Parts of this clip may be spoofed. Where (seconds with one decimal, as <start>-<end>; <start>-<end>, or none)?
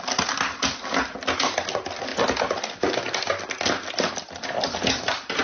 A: none